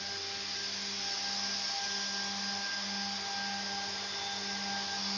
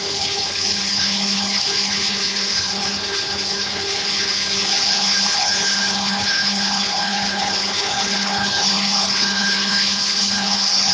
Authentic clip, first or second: first